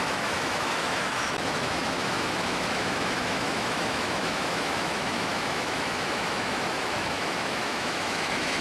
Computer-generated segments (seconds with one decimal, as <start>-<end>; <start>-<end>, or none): 0.0-8.6